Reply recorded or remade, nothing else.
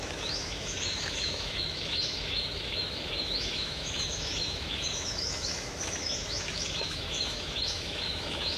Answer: remade